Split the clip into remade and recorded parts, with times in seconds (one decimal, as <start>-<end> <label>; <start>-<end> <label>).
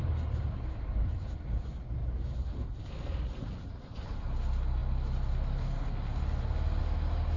0.0-1.6 remade; 1.6-2.0 recorded; 2.0-2.9 remade; 2.9-7.4 recorded